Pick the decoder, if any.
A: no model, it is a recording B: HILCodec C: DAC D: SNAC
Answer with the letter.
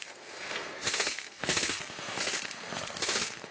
D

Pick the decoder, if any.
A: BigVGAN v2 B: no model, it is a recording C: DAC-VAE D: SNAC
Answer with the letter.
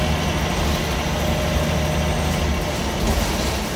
B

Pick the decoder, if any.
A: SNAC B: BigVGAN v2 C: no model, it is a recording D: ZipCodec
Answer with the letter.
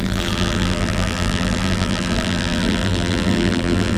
B